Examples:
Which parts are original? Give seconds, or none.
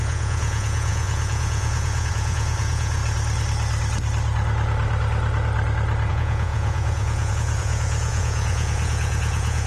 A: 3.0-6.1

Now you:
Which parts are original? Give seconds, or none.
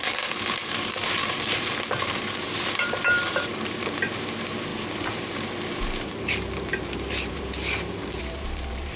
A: none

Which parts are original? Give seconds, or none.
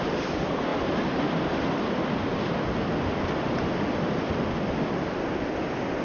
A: 0.0-6.0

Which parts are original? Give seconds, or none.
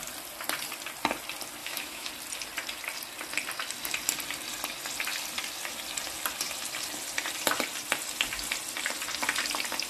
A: 0.0-1.6; 2.1-9.9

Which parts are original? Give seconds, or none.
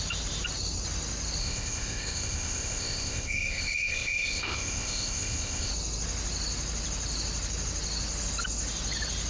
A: 0.0-1.4; 5.7-9.3